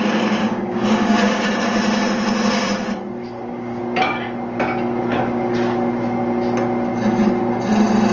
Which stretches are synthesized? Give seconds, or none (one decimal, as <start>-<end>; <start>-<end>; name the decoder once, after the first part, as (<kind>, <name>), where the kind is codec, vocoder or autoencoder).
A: 0.4-1.5 (codec, DAC); 3.2-3.8